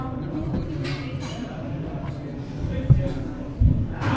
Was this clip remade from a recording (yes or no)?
no